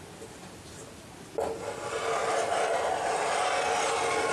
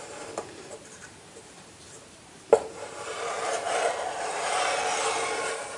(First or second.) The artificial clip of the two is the second